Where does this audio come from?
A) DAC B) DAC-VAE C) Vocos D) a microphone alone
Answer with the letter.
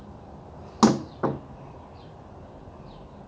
D